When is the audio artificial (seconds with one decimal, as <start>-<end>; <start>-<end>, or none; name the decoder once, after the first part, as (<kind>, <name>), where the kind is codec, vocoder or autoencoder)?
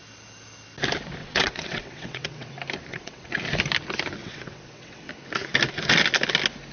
1.2-2.5 (vocoder, WaveNeXt); 2.9-3.4; 4.2-5.1